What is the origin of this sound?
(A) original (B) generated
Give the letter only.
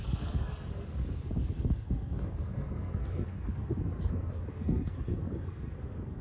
B